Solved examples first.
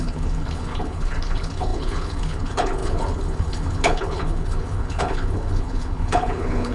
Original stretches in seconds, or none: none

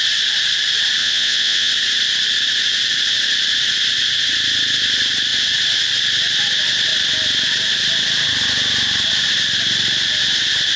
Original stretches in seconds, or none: 0.0-1.0; 1.7-10.8